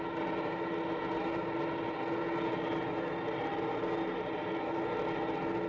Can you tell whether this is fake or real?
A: real